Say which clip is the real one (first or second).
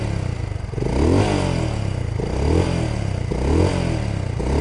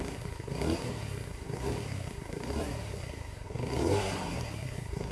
first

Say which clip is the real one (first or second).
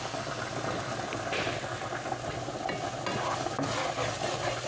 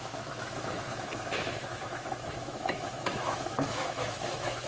first